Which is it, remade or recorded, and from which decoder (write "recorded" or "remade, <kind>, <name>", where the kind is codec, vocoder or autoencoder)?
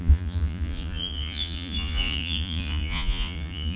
remade, vocoder, Vocos